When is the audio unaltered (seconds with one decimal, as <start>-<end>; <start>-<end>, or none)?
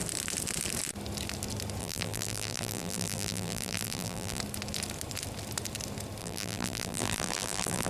0.0-1.8; 4.4-6.2